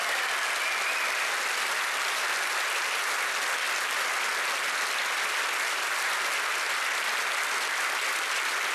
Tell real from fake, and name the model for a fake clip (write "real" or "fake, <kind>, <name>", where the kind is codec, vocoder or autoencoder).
real